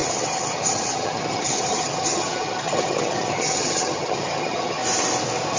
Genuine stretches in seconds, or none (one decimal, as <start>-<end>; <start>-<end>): 4.8-5.6